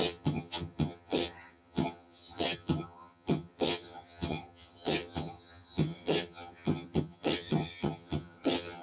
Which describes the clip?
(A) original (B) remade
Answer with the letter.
B